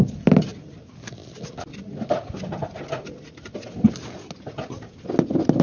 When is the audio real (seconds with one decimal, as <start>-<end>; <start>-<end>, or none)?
0.0-5.6